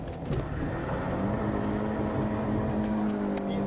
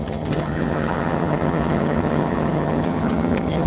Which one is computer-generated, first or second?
second